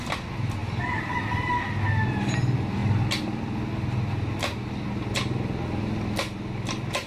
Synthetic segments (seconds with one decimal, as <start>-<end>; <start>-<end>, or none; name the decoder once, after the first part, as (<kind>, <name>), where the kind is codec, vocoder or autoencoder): none